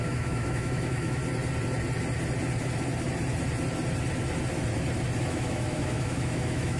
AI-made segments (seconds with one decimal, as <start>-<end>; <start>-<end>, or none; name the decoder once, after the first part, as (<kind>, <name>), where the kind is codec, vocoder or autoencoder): 0.0-1.2 (autoencoder, DAC-VAE); 5.2-6.8